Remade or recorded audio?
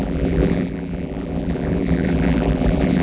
remade